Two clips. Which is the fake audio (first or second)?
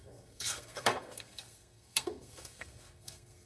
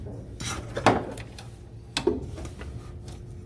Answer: first